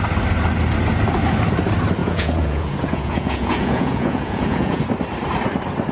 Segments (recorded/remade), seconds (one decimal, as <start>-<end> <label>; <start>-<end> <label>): 0.0-2.0 recorded; 2.0-4.8 remade; 4.8-5.9 recorded